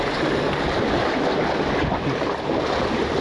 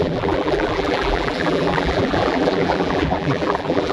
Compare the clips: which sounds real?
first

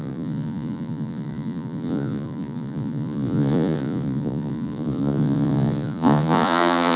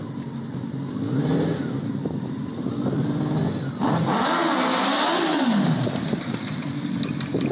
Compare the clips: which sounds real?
second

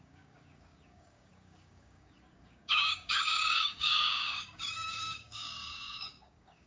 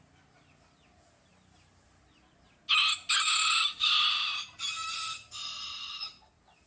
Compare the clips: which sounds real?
second